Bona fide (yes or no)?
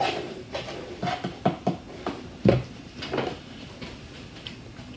yes